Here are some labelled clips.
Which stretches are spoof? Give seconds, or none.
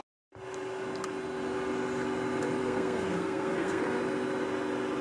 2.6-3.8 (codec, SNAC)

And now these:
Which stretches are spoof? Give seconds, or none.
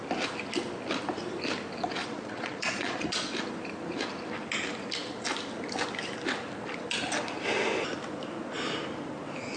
2.0-3.3 (vocoder, Vocos)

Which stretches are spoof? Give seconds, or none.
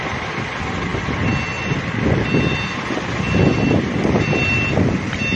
none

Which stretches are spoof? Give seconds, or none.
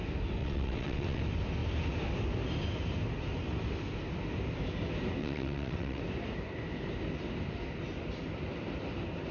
0.4-1.2 (vocoder, WaveNeXt); 5.2-6.0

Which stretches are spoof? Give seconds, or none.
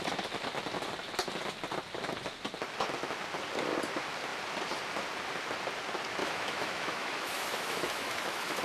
6.2-8.6 (autoencoder, DAC-VAE)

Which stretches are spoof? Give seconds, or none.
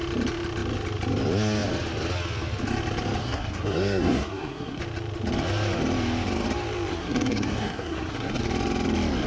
3.2-4.8 (codec, SNAC); 6.9-8.4